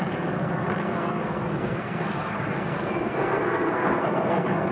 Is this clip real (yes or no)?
no